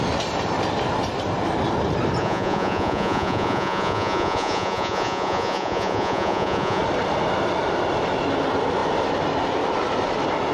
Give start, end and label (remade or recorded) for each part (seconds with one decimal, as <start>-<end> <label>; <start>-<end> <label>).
0.0-2.2 recorded; 2.2-6.8 remade; 6.8-10.5 recorded